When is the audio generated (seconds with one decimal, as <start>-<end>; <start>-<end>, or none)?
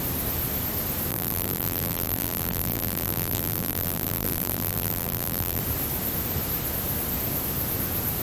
1.1-5.6